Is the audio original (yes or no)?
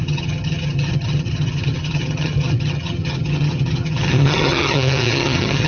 no